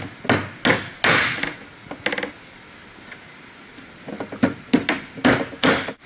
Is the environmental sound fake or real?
real